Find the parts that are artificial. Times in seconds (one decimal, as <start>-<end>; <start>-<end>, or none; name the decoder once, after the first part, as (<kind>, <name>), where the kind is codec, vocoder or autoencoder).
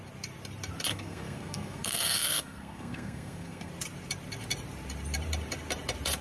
0.9-3.7 (codec, SNAC)